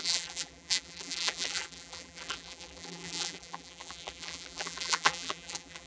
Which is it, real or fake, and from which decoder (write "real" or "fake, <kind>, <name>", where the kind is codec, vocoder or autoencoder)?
fake, vocoder, BigVGAN v2